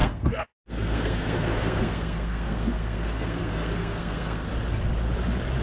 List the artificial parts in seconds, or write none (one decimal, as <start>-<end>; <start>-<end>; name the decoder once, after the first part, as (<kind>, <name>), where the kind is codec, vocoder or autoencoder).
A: 0.0-4.5 (codec, SNAC)

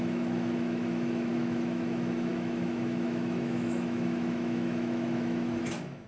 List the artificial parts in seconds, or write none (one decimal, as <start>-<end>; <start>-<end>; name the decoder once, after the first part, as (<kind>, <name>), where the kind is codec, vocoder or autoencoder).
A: 0.0-6.1 (autoencoder, DAC-VAE)

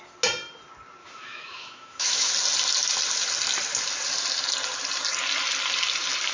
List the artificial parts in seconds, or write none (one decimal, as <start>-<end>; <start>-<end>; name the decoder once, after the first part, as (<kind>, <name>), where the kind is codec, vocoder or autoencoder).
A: 1.0-2.3 (autoencoder, DAC-VAE)

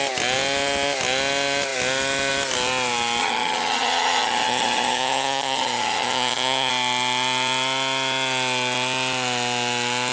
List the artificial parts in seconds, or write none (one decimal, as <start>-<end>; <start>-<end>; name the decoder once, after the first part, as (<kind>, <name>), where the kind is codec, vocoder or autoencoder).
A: 3.2-6.7 (vocoder, HiFi-GAN)

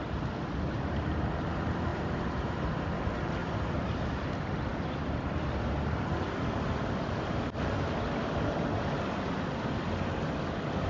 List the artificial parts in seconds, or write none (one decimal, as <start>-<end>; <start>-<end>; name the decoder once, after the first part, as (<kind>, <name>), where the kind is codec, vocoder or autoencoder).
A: 1.9-3.0 (vocoder, BigVGAN v2); 3.4-4.0

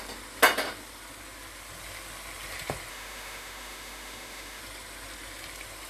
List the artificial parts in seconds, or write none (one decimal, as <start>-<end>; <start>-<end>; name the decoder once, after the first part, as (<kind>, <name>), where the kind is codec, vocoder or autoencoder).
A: 2.9-4.6 (autoencoder, DAC-VAE)